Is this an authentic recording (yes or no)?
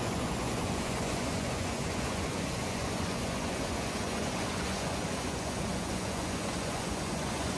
no